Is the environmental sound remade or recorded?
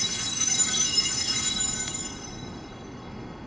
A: remade